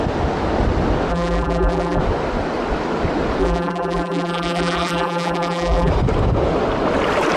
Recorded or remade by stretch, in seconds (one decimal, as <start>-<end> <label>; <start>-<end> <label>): 0.0-1.1 recorded; 1.1-2.0 remade; 2.0-3.4 recorded; 3.4-5.9 remade; 5.9-7.4 recorded